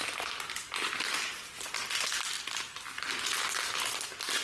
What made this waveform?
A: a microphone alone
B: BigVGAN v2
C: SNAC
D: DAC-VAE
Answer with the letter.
A